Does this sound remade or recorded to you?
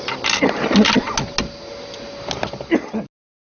recorded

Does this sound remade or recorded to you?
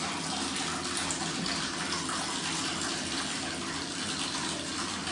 recorded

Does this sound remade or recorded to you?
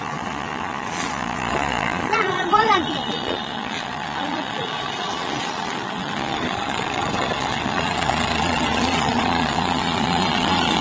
remade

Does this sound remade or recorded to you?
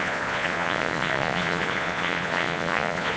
remade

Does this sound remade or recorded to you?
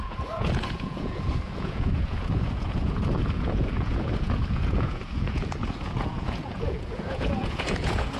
remade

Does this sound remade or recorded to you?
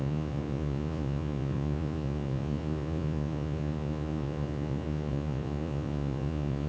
remade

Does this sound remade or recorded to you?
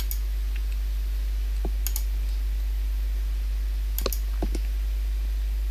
recorded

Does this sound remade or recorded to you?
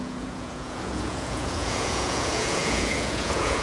remade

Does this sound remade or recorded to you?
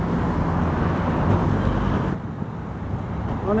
recorded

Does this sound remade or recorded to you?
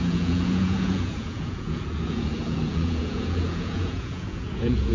remade